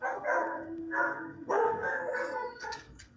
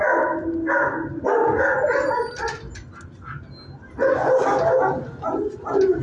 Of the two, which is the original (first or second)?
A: second